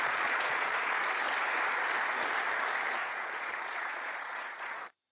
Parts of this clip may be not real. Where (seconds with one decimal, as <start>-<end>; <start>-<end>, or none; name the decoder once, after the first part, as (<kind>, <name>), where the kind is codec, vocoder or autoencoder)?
0.0-1.0 (vocoder, Vocos); 2.9-5.1